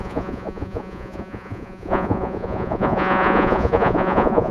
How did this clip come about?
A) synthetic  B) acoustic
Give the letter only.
A